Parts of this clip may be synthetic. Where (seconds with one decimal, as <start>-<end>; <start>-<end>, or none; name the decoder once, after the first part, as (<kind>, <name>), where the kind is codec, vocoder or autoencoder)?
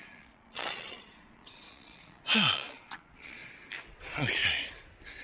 0.0-3.4 (vocoder, Vocos); 3.9-4.4